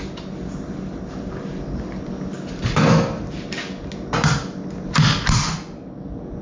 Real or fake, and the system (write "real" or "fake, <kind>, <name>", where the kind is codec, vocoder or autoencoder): real